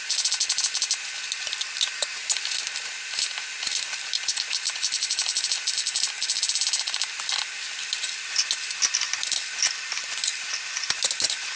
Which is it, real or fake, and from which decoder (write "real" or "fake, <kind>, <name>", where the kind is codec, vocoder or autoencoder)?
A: real